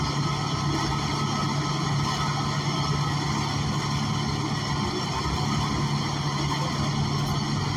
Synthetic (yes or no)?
no